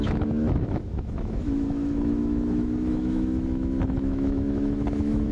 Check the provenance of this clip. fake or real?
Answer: fake